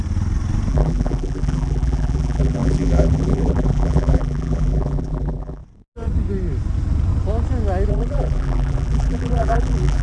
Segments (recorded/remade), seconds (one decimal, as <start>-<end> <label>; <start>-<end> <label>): 0.0-0.7 recorded; 0.7-5.6 remade; 5.6-7.9 recorded; 7.9-10.0 remade